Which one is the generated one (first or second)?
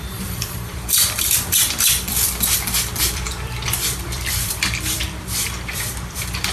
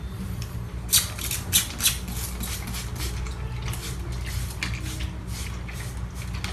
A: first